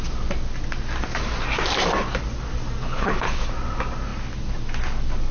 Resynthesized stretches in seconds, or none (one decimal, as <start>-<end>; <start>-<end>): 2.8-3.5